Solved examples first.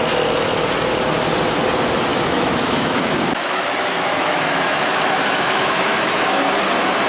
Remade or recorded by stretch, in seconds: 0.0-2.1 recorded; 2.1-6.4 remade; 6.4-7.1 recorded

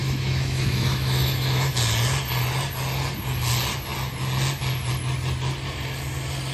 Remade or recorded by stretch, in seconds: 0.0-1.7 remade; 1.7-6.5 recorded